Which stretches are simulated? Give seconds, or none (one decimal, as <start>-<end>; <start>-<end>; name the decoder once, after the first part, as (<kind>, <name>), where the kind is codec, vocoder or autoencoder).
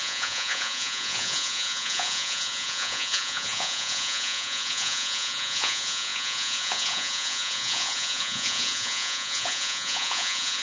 0.0-10.6 (vocoder, Vocos)